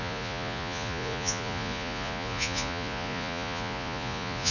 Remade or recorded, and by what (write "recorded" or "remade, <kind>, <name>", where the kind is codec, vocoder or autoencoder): remade, vocoder, Vocos